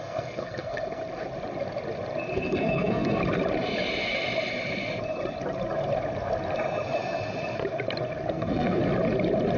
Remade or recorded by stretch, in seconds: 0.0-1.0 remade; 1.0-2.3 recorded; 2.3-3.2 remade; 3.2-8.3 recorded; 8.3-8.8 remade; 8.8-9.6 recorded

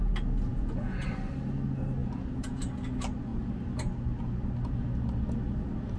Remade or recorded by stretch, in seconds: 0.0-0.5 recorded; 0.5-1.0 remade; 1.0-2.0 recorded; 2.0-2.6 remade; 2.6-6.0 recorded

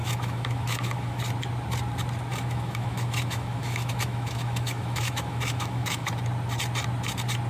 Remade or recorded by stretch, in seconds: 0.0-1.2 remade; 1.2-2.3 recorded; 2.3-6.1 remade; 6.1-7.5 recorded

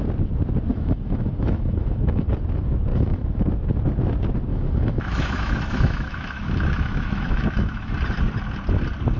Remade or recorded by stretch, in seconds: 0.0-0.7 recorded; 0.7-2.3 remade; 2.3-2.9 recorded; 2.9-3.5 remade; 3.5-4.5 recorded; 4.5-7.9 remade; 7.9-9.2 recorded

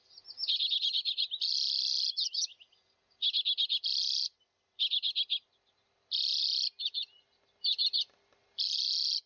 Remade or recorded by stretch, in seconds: 0.0-9.3 recorded

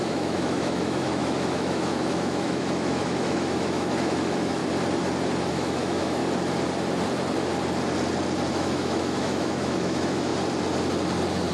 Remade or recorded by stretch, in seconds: 0.0-4.6 remade; 4.6-5.5 recorded; 5.5-6.2 remade; 6.2-8.5 recorded; 8.5-10.3 remade; 10.3-11.5 recorded

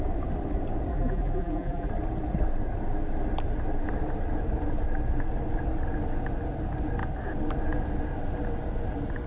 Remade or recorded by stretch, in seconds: 0.0-0.9 recorded; 0.9-1.9 remade; 1.9-9.3 recorded